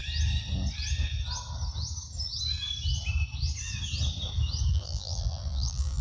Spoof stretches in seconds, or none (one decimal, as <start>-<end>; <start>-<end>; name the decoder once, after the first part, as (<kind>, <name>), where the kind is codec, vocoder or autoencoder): 4.7-6.0 (vocoder, BigVGAN v2)